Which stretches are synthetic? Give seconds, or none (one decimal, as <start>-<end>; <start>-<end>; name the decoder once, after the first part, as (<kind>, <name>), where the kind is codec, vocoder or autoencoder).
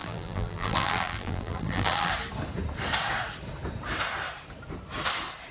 0.0-2.1 (vocoder, BigVGAN v2)